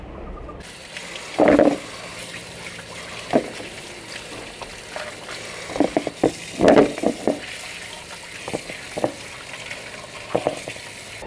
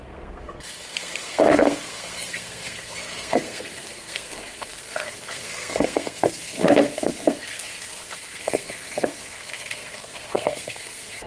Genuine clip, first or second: first